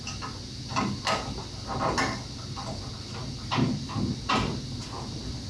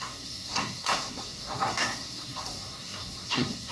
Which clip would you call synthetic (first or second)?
second